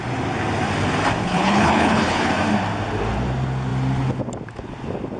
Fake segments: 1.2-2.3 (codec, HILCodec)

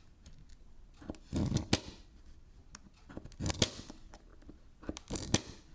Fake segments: none

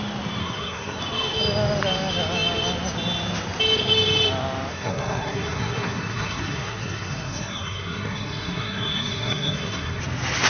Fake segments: 0.4-1.0 (codec, SNAC); 4.7-10.0

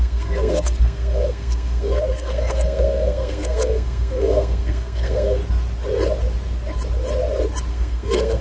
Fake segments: 0.0-5.4 (codec, SNAC); 7.7-8.4

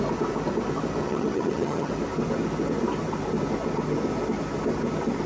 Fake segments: 1.0-1.9 (vocoder, HiFi-GAN)

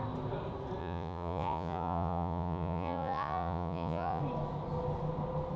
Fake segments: 0.8-4.2 (vocoder, Vocos)

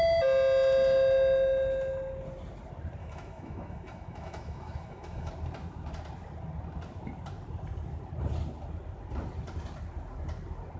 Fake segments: 3.0-5.3 (autoencoder, DAC-VAE)